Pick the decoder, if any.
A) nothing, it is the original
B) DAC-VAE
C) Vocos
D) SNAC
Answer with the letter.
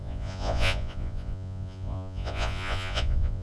C